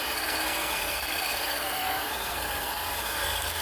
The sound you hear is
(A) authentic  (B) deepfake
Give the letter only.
B